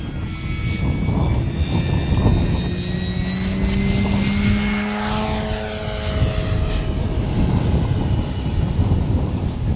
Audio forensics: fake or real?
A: real